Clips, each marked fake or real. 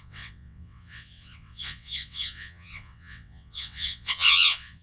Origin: fake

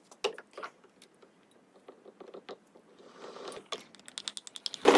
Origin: real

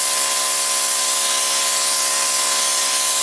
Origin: real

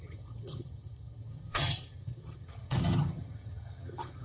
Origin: fake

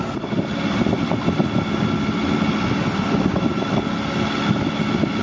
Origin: real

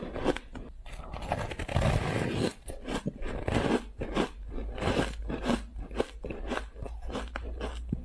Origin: real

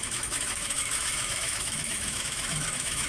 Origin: fake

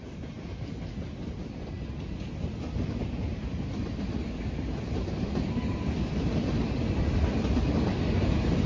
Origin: real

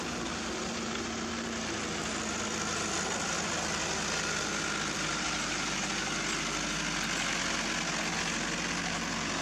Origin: real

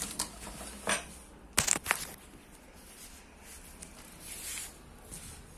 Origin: real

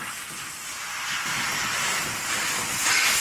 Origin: real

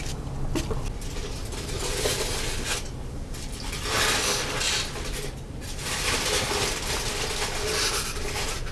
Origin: real